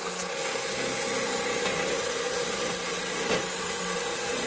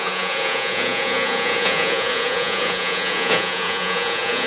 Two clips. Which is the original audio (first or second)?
first